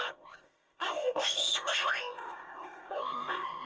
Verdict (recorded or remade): remade